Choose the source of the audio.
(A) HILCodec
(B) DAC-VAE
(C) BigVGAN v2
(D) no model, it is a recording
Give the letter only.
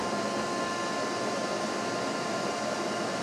D